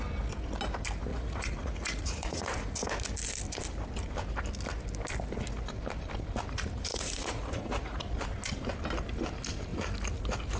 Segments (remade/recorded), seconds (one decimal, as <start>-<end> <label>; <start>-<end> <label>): 0.0-1.1 recorded; 1.1-2.9 remade; 2.9-6.9 recorded; 6.9-8.0 remade; 8.0-10.6 recorded